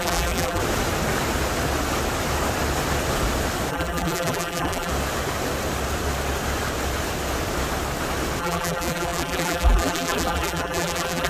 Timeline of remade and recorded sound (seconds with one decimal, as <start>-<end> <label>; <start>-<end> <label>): 0.0-0.6 remade; 0.6-3.7 recorded; 3.7-4.9 remade; 4.9-8.4 recorded; 8.4-11.3 remade